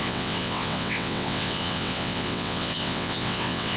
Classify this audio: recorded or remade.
remade